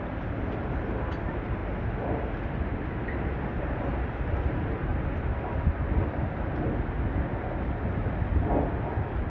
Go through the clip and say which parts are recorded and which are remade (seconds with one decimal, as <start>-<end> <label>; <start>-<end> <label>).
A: 0.0-9.3 recorded